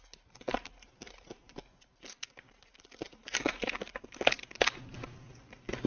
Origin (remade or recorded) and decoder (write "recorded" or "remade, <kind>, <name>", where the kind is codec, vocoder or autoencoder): recorded